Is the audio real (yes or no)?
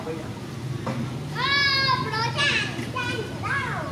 yes